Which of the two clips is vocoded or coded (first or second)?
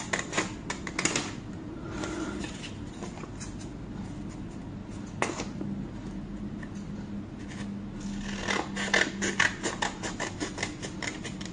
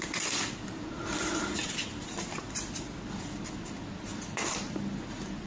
second